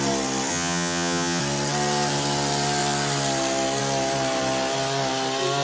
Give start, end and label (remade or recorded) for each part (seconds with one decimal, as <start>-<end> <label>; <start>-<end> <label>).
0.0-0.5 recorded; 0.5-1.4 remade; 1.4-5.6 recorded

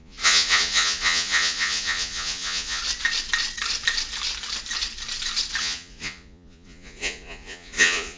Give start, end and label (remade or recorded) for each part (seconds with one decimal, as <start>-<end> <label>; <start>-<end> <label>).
0.0-2.8 remade; 2.8-5.6 recorded; 5.6-8.2 remade

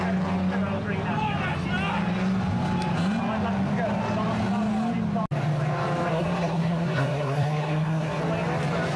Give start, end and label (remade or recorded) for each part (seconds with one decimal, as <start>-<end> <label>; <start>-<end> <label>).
0.0-6.1 recorded; 6.1-8.2 remade; 8.2-9.0 recorded

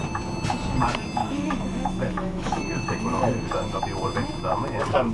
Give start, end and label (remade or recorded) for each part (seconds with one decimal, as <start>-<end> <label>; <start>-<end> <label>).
0.0-1.2 recorded; 1.2-3.8 remade; 3.8-5.1 recorded

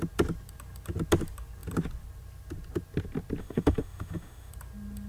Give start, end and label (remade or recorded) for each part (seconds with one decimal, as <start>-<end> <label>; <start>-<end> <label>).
0.0-3.4 recorded; 3.4-4.5 remade; 4.5-5.1 recorded